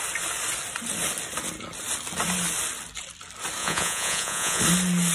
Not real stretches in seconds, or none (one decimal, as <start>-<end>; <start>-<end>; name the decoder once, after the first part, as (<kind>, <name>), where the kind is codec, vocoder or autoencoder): 3.6-4.6 (vocoder, Vocos)